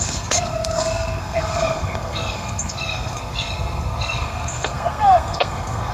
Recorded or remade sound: remade